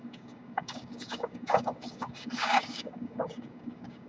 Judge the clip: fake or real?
fake